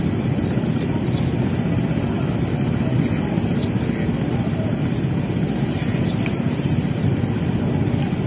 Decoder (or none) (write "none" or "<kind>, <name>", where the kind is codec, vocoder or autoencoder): none